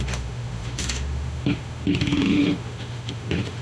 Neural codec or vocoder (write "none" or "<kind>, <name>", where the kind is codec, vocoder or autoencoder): autoencoder, DAC-VAE